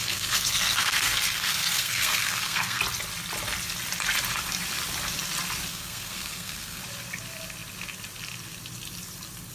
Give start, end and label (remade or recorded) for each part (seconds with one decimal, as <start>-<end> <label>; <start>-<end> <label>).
0.0-2.8 remade; 2.8-5.7 recorded; 5.7-6.8 remade; 6.8-9.5 recorded